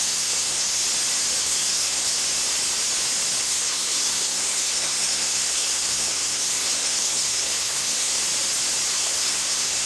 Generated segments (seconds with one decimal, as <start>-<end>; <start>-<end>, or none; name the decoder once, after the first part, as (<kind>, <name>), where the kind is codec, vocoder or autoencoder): 0.0-0.8 (codec, SNAC); 1.4-2.2; 3.4-8.2; 8.9-9.9